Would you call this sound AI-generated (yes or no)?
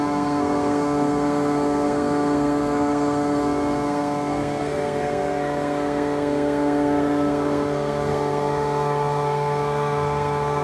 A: yes